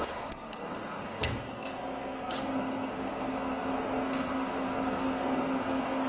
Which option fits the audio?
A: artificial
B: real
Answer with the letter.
A